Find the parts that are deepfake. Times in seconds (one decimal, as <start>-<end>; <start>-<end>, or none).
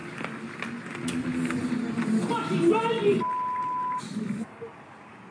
none